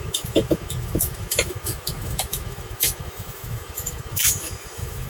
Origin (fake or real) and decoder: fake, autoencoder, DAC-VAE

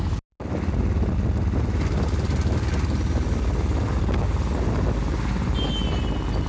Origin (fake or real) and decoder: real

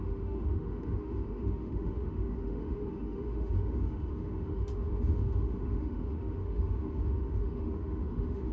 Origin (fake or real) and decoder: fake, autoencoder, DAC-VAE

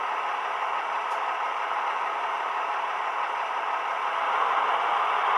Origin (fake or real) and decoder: real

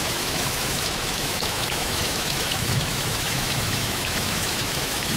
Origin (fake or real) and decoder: fake, autoencoder, DAC-VAE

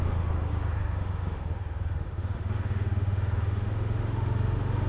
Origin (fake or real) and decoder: fake, autoencoder, DAC-VAE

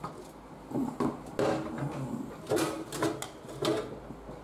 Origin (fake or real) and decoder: real